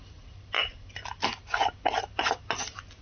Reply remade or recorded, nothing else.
recorded